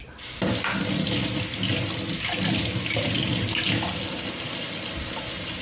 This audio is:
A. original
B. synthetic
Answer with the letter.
A